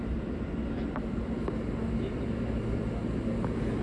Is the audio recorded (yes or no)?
yes